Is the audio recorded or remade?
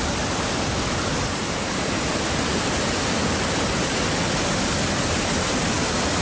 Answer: recorded